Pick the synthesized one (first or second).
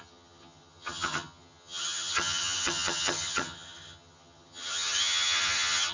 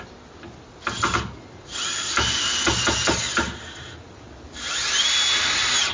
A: first